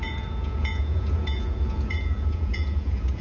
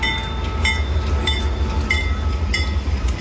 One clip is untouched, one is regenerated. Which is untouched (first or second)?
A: second